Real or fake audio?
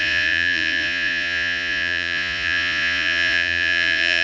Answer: fake